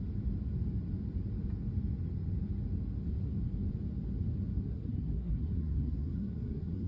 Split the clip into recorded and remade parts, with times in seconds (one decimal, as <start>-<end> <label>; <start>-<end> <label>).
0.0-4.5 recorded; 4.5-6.9 remade